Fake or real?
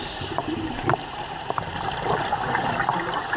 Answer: real